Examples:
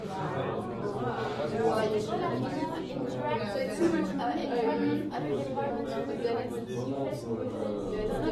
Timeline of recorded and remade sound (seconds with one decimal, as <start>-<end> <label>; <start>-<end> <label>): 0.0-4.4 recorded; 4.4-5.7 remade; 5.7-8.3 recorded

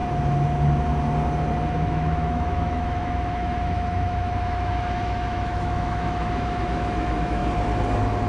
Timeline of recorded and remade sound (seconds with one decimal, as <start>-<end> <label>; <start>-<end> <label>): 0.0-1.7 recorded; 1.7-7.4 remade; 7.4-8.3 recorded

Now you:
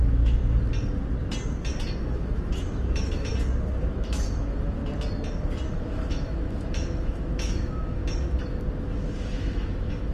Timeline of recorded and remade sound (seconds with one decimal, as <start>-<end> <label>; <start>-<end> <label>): 0.0-0.4 remade; 0.4-2.0 recorded; 2.0-3.3 remade; 3.3-3.8 recorded; 3.8-4.8 remade; 4.8-5.7 recorded; 5.7-8.0 remade; 8.0-8.8 recorded; 8.8-10.1 remade

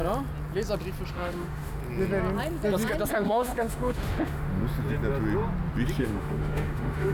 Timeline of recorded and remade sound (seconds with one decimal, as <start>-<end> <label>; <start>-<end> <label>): 0.0-1.1 recorded; 1.1-1.8 remade; 1.8-3.1 recorded; 3.1-4.6 remade; 4.6-6.0 recorded; 6.0-7.1 remade

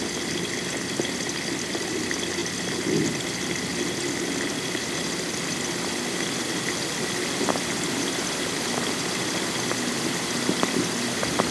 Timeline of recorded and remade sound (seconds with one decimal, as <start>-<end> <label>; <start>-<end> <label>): 0.0-11.5 recorded